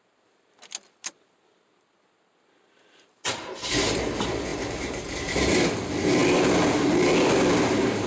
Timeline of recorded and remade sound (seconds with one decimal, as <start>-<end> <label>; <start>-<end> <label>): 0.0-4.5 recorded; 4.5-5.8 remade; 5.8-8.1 recorded